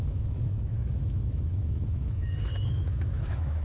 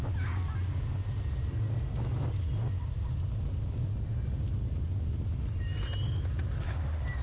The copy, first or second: first